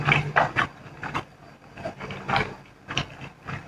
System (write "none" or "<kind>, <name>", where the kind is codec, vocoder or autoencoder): vocoder, BigVGAN v2